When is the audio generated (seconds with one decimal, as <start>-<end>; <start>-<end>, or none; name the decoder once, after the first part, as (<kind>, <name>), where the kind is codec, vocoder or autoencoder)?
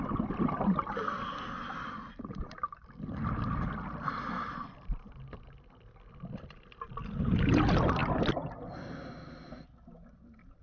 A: none